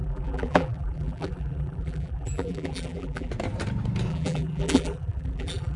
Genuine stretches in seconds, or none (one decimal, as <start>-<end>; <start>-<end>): 3.3-4.1